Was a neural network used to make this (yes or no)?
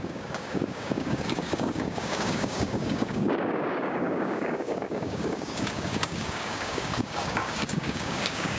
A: yes